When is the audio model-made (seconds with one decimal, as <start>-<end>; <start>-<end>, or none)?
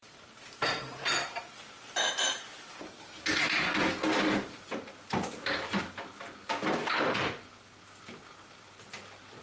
none